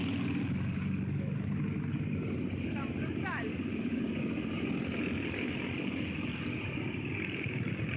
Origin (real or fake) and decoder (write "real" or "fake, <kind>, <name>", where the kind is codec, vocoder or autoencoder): real